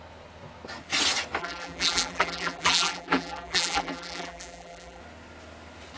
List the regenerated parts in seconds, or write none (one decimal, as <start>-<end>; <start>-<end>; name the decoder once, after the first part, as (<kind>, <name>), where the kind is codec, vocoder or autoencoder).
1.4-5.0 (vocoder, BigVGAN v2)